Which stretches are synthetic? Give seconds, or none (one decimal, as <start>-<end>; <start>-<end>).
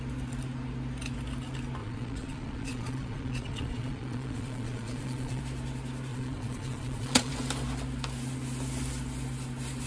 1.8-5.4; 6.1-7.3